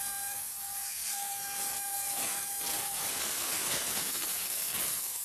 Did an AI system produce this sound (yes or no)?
yes